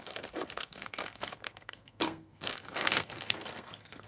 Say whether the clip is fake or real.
fake